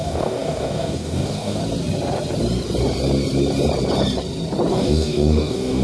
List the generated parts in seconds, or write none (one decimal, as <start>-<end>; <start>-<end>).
0.0-1.6; 4.7-5.8